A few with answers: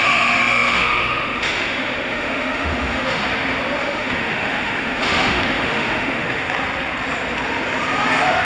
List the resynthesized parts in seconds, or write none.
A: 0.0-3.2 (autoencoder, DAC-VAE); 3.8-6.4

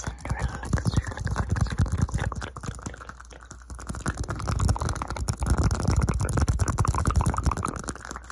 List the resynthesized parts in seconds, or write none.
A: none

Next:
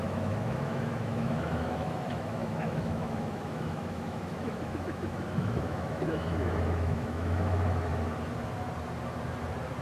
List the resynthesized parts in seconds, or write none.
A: 0.0-7.9 (autoencoder, DAC-VAE)